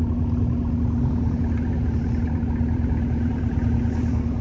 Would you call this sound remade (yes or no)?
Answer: no